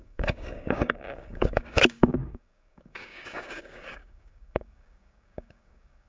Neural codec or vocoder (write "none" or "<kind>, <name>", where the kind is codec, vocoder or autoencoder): codec, DAC